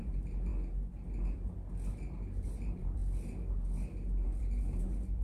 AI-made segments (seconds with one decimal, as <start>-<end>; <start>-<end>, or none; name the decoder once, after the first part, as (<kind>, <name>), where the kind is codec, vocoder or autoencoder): 0.0-0.5 (vocoder, BigVGAN v2); 1.9-3.0; 4.4-5.2